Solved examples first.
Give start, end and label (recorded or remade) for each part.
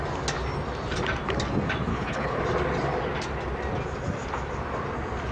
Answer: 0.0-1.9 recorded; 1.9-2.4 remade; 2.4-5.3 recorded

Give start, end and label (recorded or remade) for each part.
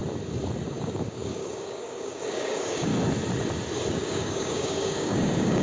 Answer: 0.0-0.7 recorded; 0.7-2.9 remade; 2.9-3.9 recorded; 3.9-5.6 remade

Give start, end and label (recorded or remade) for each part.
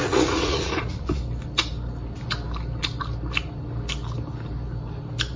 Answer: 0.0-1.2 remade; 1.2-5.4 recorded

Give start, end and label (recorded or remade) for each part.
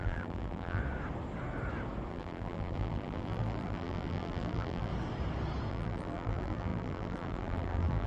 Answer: 0.0-0.8 remade; 0.8-2.1 recorded; 2.1-4.9 remade; 4.9-5.7 recorded; 5.7-8.1 remade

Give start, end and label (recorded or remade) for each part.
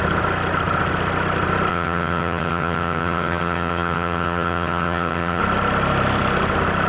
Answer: 0.0-1.7 recorded; 1.7-5.4 remade; 5.4-6.9 recorded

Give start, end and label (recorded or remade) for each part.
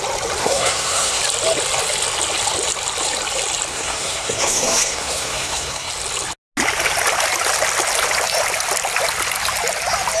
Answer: 0.0-0.4 recorded; 0.4-1.2 remade; 1.2-3.7 recorded; 3.7-5.9 remade; 5.9-10.2 recorded